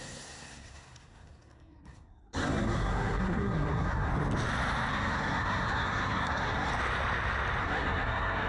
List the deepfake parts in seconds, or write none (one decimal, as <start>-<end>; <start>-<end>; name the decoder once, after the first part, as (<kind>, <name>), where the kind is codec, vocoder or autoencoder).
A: 0.0-4.1 (codec, SNAC); 4.9-6.7; 7.6-8.5